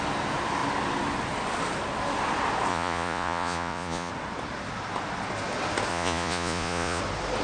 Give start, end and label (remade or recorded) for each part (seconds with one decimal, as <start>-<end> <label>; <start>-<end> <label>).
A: 0.0-2.7 recorded; 2.7-4.1 remade; 4.1-5.9 recorded; 5.9-7.0 remade; 7.0-7.4 recorded